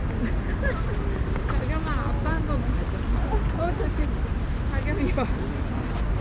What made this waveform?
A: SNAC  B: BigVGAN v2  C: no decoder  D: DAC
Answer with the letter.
C